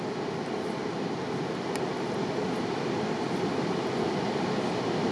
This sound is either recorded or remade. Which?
recorded